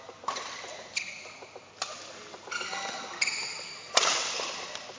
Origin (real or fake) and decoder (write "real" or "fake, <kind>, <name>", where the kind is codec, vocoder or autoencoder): real